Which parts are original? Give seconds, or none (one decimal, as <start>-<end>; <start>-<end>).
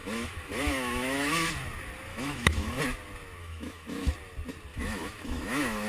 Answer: 1.5-2.1; 2.8-3.4; 4.1-4.7